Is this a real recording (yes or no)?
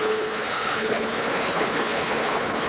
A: no